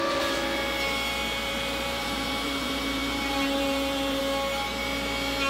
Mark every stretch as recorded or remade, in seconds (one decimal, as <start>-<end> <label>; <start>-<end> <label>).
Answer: 0.0-1.2 recorded; 1.2-4.2 remade; 4.2-5.5 recorded